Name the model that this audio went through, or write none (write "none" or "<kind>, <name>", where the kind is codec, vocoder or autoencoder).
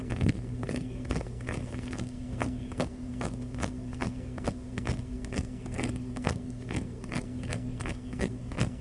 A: codec, SNAC